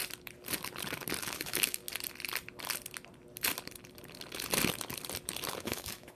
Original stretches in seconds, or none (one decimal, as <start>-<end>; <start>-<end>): 0.0-1.2; 1.8-5.5